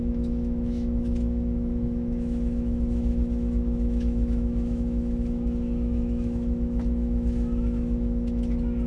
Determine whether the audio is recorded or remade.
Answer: remade